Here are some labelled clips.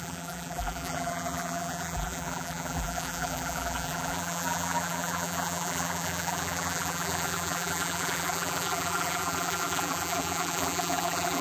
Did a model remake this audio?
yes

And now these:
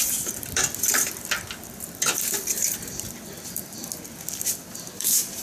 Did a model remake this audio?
yes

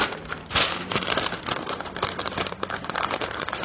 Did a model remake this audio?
yes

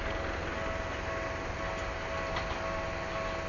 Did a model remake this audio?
no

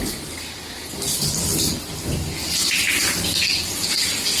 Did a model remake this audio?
no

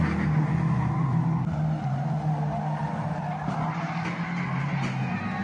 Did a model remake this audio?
no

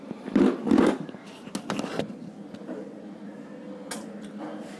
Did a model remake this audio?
no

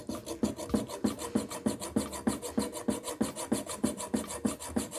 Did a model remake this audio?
no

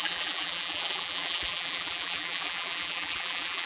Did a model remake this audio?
yes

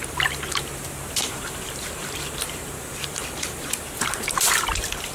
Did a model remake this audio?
yes